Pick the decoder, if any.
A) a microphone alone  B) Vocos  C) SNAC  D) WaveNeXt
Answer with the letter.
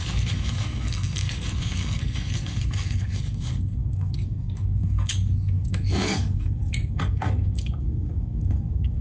C